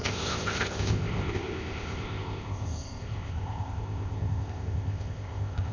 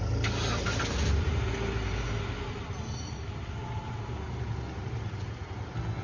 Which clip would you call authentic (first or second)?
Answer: second